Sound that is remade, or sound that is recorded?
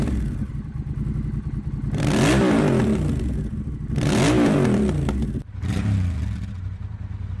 recorded